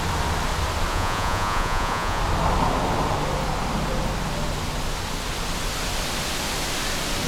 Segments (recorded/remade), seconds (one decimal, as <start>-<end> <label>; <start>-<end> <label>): 0.0-0.9 recorded; 0.9-2.2 remade; 2.2-7.3 recorded